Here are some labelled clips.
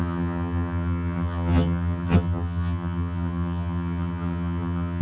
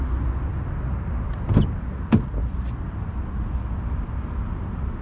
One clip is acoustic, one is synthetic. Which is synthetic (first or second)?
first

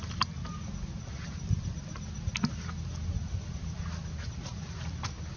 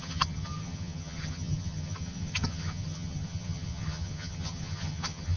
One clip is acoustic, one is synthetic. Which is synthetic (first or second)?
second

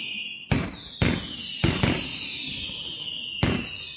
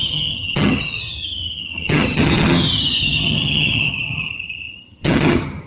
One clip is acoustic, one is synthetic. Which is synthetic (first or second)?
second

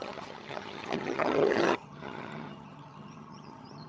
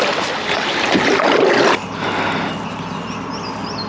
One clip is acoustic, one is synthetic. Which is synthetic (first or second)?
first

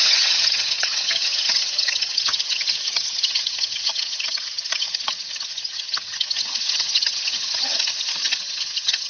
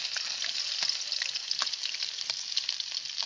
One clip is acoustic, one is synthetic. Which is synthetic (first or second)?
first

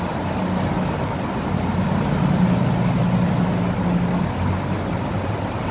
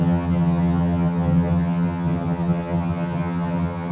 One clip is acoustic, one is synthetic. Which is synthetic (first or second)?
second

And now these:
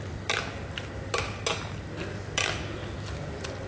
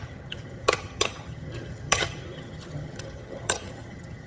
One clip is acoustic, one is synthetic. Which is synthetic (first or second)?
second